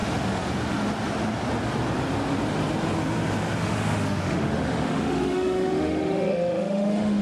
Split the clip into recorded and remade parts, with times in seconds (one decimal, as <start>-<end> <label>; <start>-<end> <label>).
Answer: 0.0-3.6 recorded; 3.6-7.2 remade